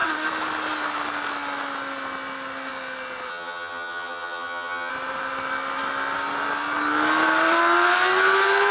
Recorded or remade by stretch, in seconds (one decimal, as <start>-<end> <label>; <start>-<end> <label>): 0.0-3.3 recorded; 3.3-4.9 remade; 4.9-8.7 recorded